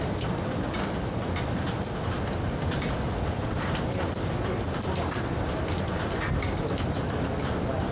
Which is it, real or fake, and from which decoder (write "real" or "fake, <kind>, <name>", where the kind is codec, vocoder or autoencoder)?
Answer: real